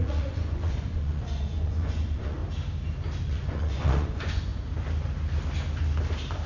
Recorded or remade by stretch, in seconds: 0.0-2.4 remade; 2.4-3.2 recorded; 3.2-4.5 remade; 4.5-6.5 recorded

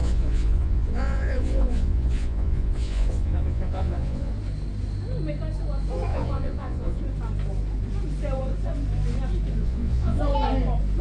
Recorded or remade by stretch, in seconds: 0.0-4.3 remade; 4.3-6.1 recorded; 6.1-7.0 remade; 7.0-9.6 recorded; 9.6-10.2 remade; 10.2-11.0 recorded

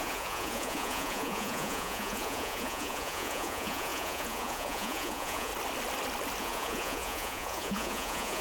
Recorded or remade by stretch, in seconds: 0.0-5.5 remade; 5.5-6.4 recorded; 6.4-8.4 remade

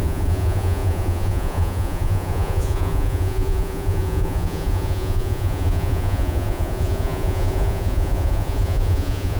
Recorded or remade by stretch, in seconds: 0.0-9.4 remade